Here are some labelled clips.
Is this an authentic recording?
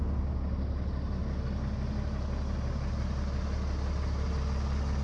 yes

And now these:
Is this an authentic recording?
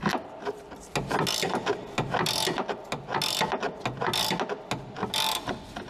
yes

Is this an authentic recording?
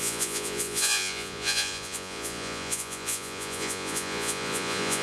no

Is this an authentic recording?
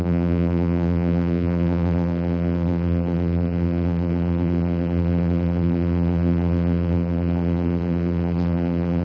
no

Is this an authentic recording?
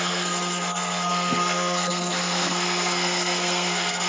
no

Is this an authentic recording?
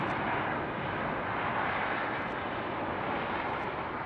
yes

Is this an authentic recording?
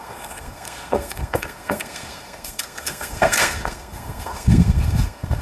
no